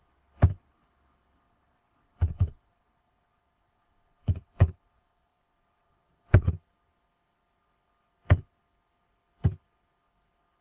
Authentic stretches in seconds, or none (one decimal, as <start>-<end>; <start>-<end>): 0.0-1.5; 6.5-10.6